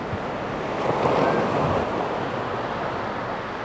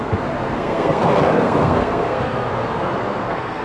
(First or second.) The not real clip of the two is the second